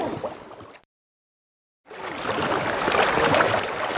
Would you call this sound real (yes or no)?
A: yes